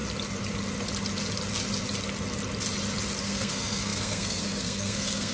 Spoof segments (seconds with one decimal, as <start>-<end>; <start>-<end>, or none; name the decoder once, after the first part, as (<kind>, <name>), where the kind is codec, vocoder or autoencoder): 3.2-5.3 (codec, SNAC)

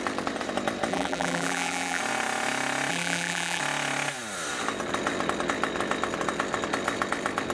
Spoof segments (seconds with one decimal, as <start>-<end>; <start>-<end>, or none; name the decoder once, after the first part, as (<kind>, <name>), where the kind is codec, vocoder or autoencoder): 0.9-2.0 (vocoder, BigVGAN v2); 2.9-3.6

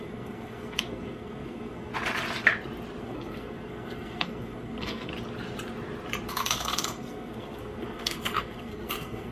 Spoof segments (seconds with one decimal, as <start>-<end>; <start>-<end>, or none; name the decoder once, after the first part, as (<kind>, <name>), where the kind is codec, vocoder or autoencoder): 0.0-1.9 (codec, SNAC); 3.0-5.1; 6.3-9.3

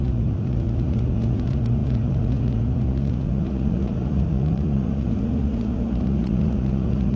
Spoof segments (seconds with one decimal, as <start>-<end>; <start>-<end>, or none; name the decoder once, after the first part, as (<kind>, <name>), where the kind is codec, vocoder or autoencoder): 0.0-7.2 (vocoder, Vocos)

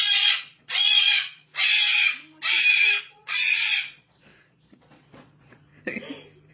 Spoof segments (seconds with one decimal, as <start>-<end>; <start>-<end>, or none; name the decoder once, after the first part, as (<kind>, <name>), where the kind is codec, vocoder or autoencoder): 0.0-1.5 (vocoder, Vocos); 3.0-5.7

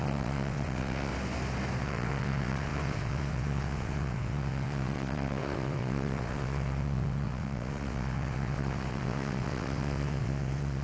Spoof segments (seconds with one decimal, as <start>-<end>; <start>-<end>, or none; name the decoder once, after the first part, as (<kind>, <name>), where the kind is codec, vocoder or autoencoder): 0.0-1.1 (vocoder, WaveNeXt); 1.8-10.8

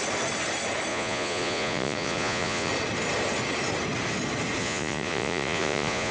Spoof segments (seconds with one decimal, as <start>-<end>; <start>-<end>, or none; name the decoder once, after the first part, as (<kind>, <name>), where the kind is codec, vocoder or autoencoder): 0.9-2.7 (vocoder, Vocos); 4.6-6.1